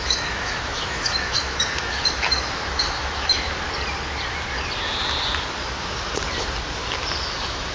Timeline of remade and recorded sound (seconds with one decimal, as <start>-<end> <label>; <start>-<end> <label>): 0.0-3.5 remade; 3.5-7.2 recorded; 7.2-7.7 remade